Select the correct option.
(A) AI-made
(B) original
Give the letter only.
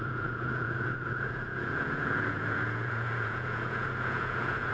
A